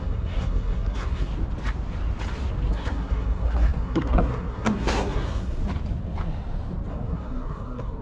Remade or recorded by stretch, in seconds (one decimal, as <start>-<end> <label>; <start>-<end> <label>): 0.0-1.3 remade; 1.3-2.7 recorded; 2.7-5.6 remade; 5.6-6.9 recorded; 6.9-8.0 remade